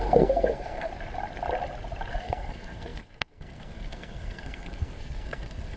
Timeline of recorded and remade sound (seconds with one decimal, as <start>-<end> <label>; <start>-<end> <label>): 0.0-0.9 remade; 0.9-2.1 recorded; 2.1-5.8 remade